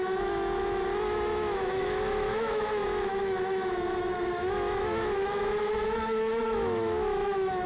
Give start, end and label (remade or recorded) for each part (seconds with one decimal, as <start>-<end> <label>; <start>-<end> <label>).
0.0-7.7 remade